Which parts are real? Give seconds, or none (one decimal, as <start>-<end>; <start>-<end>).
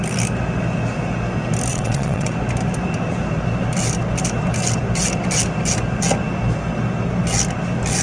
0.0-1.7; 2.3-8.0